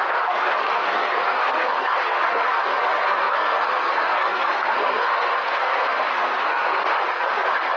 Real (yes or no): no